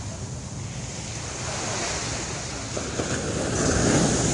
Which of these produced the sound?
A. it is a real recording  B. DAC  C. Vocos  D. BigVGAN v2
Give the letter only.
A